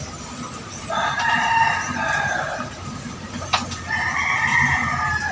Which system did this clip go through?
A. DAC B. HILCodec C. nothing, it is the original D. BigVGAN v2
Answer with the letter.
D